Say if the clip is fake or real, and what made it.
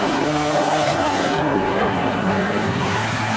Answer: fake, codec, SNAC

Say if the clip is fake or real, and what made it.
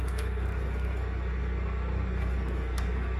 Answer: fake, codec, SNAC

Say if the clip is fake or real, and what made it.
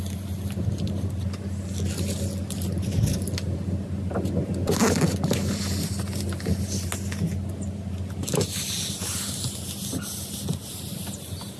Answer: real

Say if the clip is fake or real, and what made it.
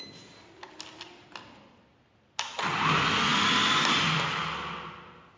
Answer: real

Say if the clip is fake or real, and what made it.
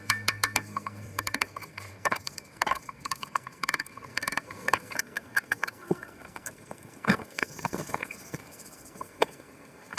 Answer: fake, codec, SNAC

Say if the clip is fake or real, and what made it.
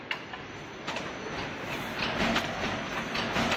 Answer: real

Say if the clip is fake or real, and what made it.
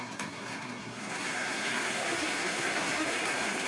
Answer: fake, codec, SNAC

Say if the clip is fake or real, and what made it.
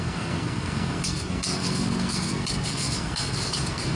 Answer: fake, codec, SNAC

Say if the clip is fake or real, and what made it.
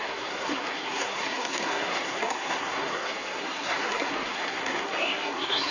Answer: fake, codec, SNAC